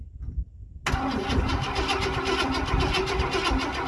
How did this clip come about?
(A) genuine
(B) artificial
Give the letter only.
A